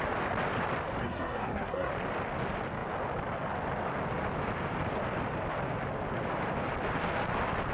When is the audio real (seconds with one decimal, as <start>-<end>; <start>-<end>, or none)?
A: 0.0-1.0; 1.9-7.7